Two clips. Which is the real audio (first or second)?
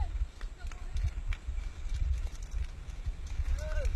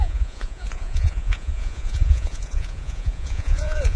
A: first